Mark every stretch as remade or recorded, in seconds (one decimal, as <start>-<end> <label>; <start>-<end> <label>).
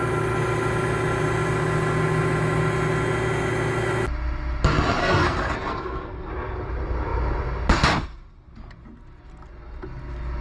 0.0-5.0 recorded; 5.0-6.3 remade; 6.3-10.4 recorded